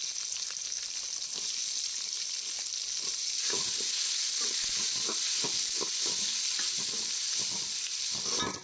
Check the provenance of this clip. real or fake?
real